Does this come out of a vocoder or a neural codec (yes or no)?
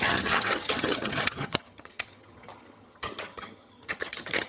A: yes